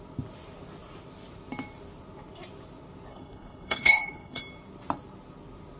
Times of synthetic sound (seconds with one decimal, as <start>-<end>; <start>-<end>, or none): 3.1-4.4